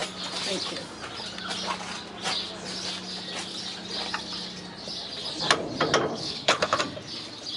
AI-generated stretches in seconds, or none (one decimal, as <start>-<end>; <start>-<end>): 6.1-6.8